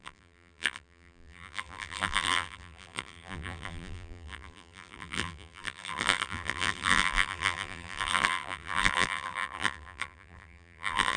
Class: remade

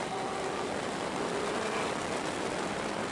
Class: recorded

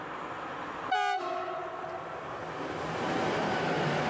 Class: recorded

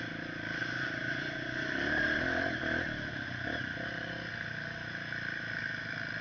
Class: recorded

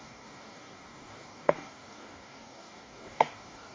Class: remade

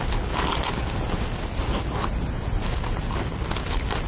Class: recorded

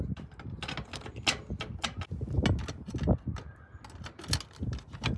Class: recorded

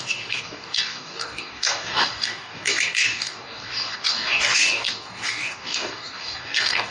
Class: remade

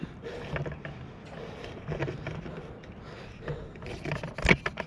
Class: recorded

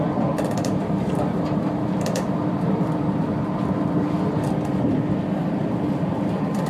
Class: remade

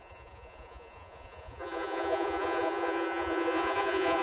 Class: remade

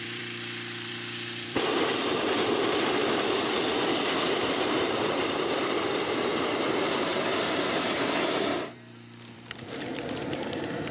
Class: remade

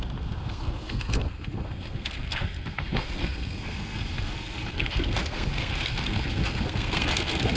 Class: remade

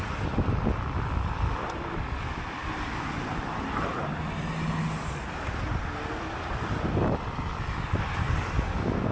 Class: recorded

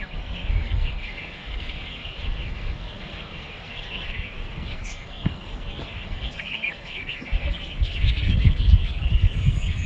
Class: remade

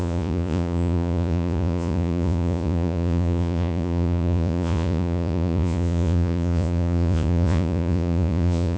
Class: remade